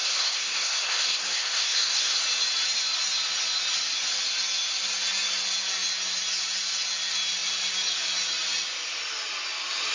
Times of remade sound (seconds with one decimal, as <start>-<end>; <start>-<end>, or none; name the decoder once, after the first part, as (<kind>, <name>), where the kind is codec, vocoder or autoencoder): 0.0-2.2 (codec, SNAC)